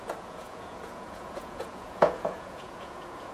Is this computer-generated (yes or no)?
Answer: yes